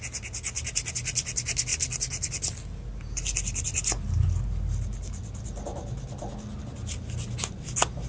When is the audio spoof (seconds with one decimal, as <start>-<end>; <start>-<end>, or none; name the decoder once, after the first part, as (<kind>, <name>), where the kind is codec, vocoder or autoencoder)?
none